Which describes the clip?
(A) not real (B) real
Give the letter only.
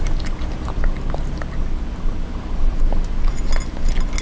B